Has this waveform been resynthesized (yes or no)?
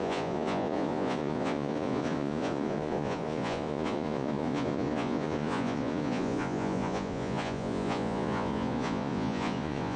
yes